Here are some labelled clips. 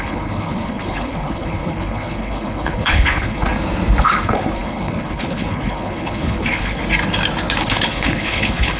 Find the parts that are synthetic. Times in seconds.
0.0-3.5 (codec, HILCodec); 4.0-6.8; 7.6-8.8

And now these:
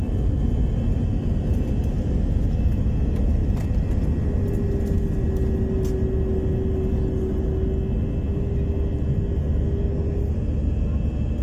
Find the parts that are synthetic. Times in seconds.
none

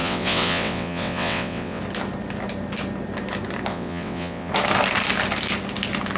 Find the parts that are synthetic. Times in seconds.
0.0-1.8 (vocoder, WaveNeXt); 3.7-4.5

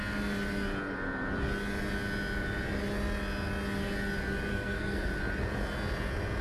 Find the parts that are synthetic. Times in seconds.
4.5-5.1 (codec, SNAC)

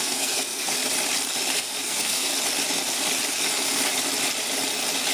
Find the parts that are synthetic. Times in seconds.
0.0-0.8 (codec, SNAC); 1.5-2.3

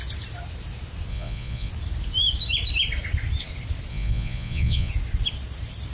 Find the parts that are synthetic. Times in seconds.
1.1-1.7 (vocoder, Vocos); 3.9-4.9

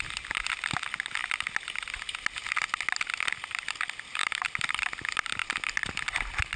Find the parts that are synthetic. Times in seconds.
none

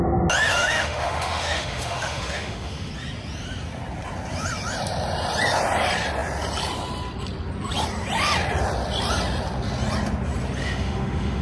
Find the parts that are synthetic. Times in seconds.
0.5-2.9 (autoencoder, DAC-VAE); 10.6-11.4